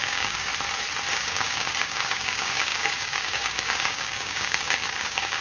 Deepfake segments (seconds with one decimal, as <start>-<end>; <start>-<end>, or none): 0.0-0.5; 1.1-5.4